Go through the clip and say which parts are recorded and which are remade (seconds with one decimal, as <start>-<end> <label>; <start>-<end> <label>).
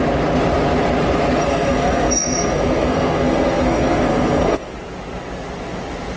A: 0.0-1.5 recorded; 1.5-4.7 remade; 4.7-6.2 recorded